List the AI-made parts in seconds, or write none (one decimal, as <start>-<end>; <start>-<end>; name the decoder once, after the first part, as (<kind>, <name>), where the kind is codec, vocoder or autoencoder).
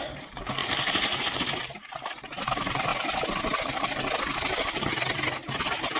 0.0-2.9 (vocoder, BigVGAN v2)